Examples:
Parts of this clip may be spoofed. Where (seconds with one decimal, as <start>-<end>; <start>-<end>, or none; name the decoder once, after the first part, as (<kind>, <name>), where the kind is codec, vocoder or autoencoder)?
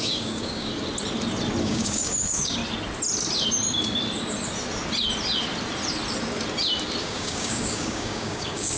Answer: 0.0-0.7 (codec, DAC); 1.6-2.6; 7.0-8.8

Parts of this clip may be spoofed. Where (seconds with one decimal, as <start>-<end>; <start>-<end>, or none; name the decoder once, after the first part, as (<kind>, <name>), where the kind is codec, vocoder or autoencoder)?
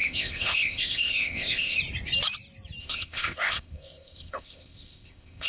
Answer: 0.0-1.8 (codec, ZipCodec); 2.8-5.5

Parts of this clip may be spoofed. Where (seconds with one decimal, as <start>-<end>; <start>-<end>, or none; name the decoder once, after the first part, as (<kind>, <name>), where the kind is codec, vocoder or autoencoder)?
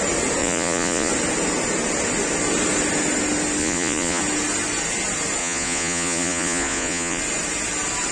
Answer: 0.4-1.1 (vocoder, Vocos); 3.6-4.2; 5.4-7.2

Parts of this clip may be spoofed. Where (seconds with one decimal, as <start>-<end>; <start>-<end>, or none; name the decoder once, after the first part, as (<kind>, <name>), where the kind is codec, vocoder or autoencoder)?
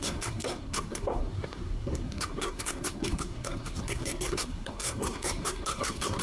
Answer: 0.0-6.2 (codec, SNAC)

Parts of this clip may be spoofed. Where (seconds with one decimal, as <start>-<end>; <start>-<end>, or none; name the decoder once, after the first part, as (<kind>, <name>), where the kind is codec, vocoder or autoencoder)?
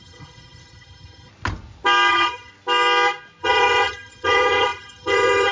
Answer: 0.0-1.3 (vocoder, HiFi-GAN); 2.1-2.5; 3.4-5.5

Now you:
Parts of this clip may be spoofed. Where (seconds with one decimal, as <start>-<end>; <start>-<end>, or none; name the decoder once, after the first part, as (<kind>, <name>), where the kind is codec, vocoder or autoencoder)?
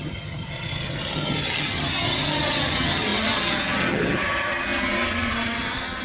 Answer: 0.0-6.0 (vocoder, HiFi-GAN)